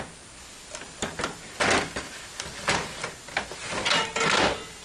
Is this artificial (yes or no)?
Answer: no